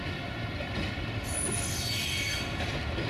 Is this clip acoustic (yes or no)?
yes